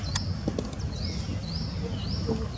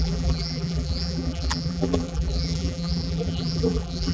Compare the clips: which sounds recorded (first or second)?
first